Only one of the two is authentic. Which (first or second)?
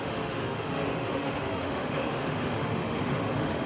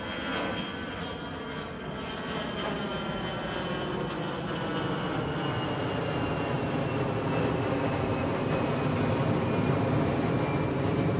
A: second